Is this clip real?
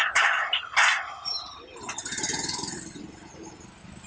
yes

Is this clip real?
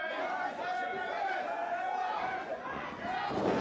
no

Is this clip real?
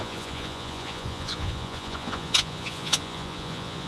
no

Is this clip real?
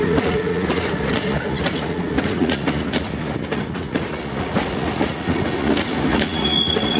no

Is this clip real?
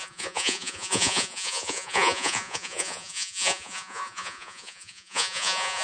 no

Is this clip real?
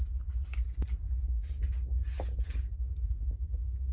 yes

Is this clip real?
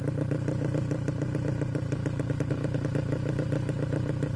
yes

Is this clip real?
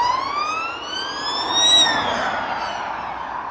yes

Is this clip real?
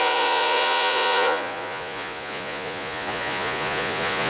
no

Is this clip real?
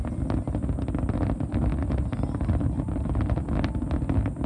yes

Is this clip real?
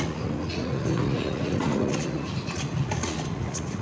no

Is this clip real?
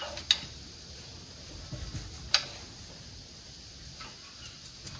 yes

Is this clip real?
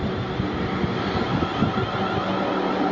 yes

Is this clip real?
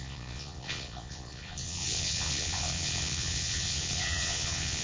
no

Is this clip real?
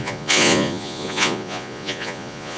no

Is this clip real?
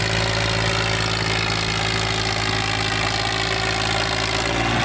yes